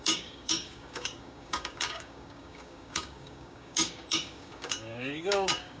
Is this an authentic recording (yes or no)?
no